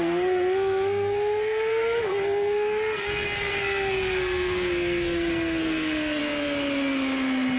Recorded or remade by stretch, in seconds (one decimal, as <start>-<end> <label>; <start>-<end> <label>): 0.0-6.2 remade; 6.2-7.6 recorded